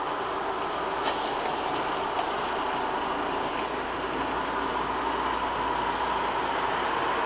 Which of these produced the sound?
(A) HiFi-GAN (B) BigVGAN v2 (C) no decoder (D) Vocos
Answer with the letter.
C